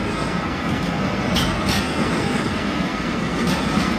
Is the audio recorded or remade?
remade